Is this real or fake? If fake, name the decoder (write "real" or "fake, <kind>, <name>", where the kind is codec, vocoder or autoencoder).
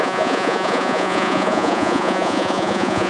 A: fake, vocoder, Vocos